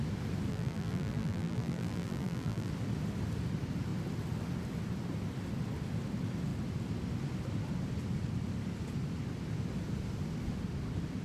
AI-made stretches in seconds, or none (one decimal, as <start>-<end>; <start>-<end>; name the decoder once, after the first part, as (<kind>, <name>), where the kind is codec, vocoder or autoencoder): 0.5-2.7 (vocoder, BigVGAN v2)